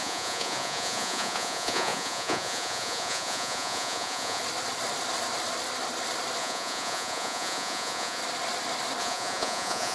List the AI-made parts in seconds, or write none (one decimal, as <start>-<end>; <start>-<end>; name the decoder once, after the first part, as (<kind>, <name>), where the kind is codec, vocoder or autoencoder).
0.0-4.4 (vocoder, Vocos); 6.4-8.2; 9.0-9.9